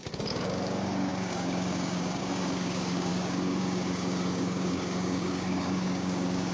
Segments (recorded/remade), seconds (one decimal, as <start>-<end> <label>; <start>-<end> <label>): 0.0-6.5 remade